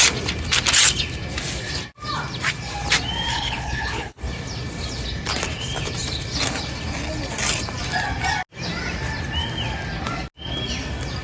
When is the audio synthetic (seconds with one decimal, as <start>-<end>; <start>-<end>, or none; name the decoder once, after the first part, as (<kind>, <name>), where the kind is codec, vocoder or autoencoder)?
3.3-4.2 (codec, HILCodec)